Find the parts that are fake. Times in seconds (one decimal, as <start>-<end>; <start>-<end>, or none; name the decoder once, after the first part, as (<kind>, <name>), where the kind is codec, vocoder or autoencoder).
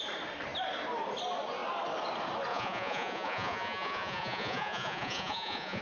2.5-5.8 (vocoder, Vocos)